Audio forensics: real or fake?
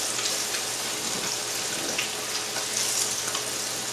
real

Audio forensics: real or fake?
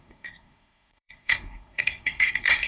fake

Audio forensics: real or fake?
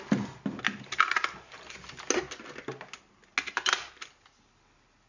real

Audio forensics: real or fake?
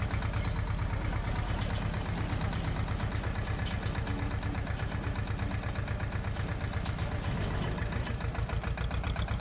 real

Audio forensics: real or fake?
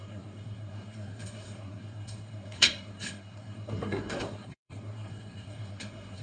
fake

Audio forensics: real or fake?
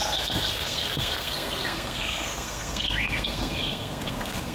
fake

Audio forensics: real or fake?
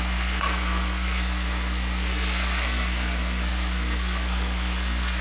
fake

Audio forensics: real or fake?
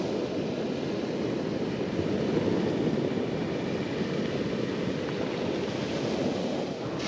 real